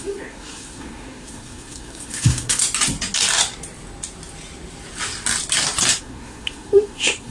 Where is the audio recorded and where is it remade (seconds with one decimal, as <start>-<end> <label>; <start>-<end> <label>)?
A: 0.0-2.6 remade; 2.6-6.0 recorded; 6.0-7.3 remade